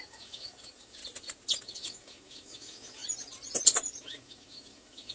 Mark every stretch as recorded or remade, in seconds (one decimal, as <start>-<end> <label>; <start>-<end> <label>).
0.0-1.0 remade; 1.0-1.6 recorded; 1.6-3.0 remade; 3.0-4.0 recorded; 4.0-5.1 remade